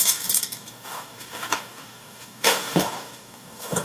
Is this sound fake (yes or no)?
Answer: yes